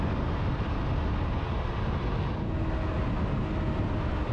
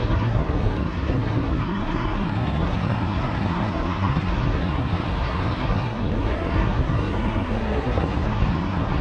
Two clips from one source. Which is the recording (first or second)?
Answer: first